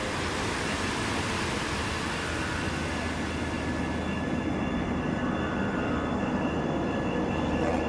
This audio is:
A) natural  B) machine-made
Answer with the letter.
A